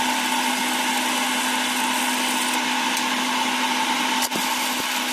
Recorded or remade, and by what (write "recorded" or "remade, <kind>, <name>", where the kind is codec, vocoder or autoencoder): recorded